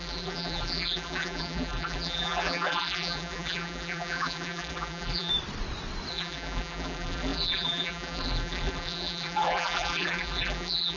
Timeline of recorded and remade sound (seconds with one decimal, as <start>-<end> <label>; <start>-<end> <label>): 0.0-5.3 remade; 5.3-6.1 recorded; 6.1-11.0 remade